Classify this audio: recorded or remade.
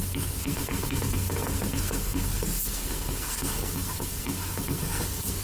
remade